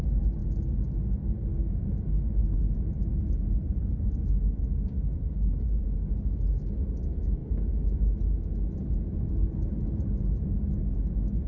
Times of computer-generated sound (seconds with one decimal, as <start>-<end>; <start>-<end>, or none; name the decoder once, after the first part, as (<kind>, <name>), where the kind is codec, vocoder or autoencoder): none

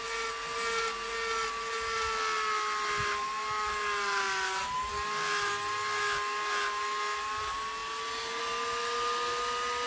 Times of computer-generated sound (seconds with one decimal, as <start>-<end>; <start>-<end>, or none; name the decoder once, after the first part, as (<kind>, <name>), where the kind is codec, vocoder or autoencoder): none

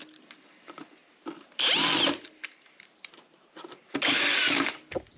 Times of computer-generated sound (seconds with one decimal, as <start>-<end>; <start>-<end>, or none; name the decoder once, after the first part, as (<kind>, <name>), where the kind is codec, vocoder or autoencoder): none

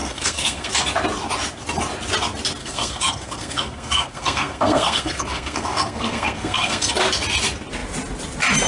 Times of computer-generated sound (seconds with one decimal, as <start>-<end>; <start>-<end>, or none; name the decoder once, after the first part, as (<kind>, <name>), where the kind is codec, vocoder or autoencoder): 0.0-0.7 (codec, SNAC); 2.6-6.9